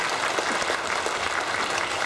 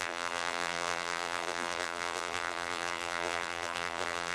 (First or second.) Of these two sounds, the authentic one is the first